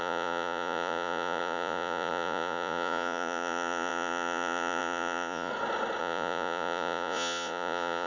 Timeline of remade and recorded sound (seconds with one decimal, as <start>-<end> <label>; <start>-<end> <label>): 0.0-5.5 remade; 5.5-6.0 recorded; 6.0-8.1 remade